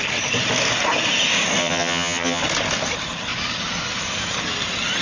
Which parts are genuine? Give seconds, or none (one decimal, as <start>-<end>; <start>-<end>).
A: 0.0-1.6; 2.4-5.0